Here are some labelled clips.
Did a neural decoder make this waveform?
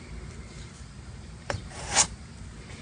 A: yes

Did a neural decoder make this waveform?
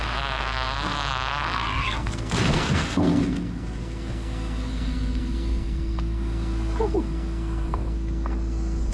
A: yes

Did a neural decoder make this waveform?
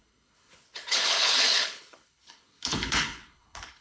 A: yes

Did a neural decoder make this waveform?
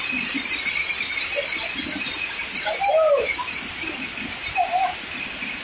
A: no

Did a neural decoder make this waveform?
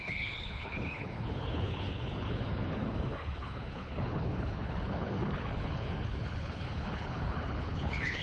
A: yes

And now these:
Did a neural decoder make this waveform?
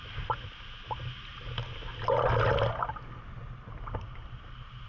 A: no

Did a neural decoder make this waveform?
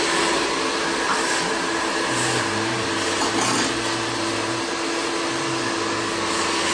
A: no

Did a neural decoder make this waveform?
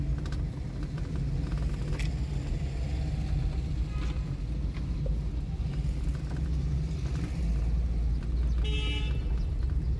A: no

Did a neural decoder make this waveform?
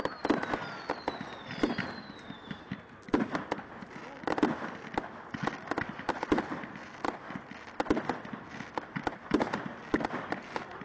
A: no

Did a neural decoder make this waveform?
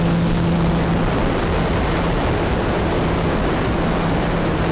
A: no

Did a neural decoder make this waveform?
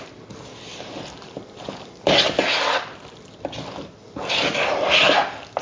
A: no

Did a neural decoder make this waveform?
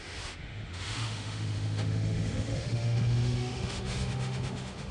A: yes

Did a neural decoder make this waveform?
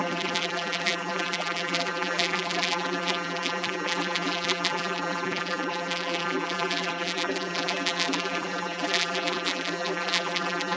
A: yes